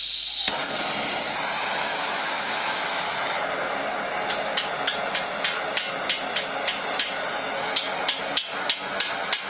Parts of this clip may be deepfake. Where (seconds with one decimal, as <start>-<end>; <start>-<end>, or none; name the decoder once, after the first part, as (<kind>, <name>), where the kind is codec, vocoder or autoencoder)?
1.9-3.4 (autoencoder, DAC-VAE)